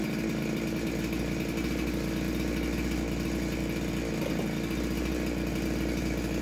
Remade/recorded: recorded